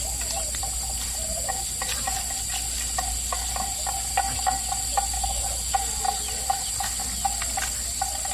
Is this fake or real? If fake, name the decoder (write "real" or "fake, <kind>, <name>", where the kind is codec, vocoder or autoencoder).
real